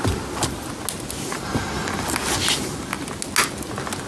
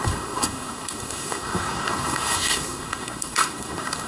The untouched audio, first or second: first